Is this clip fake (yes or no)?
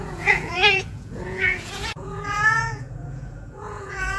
yes